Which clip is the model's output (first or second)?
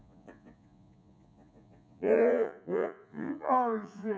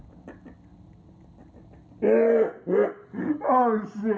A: first